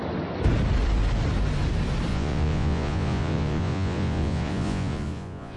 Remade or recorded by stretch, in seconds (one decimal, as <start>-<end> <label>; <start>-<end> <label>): 0.0-2.1 recorded; 2.1-5.6 remade

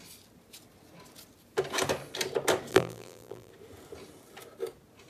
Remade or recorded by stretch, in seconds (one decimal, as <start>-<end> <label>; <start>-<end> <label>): 0.0-2.7 recorded; 2.7-3.5 remade; 3.5-5.1 recorded

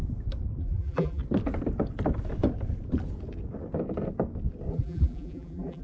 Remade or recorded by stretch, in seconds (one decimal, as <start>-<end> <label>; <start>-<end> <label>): 0.0-0.6 recorded; 0.6-1.2 remade; 1.2-4.7 recorded; 4.7-5.8 remade

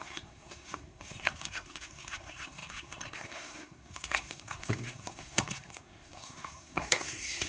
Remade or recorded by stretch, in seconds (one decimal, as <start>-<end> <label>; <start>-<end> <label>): 0.0-7.5 remade

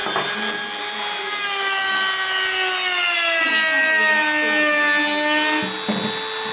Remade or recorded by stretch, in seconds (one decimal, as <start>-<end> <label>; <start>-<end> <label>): 0.0-6.5 recorded

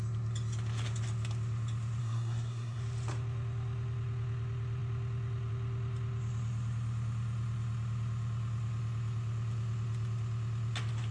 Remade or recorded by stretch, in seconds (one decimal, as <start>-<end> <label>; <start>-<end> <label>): 0.0-2.0 recorded; 2.0-2.8 remade; 2.8-11.1 recorded